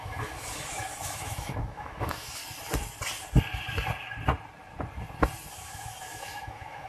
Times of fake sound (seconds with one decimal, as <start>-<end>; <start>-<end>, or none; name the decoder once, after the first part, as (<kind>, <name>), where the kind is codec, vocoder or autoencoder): 0.0-2.4 (autoencoder, DAC-VAE); 5.5-6.9